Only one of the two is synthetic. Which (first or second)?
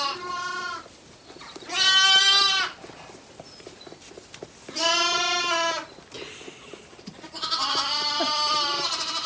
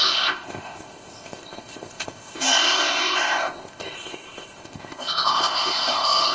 second